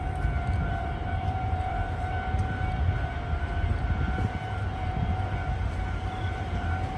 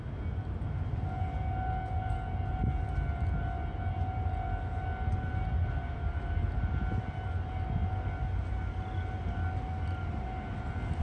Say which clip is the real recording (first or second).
second